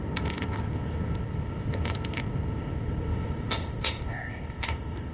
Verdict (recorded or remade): remade